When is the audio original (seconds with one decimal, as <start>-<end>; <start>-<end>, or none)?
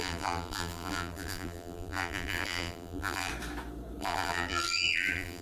3.3-4.0